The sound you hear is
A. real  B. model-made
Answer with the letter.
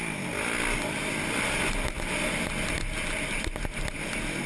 A